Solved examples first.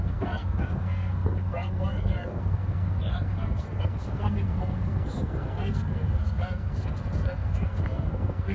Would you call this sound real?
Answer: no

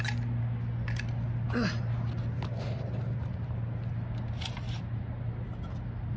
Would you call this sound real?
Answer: yes